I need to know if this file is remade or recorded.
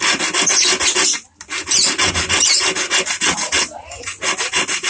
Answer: recorded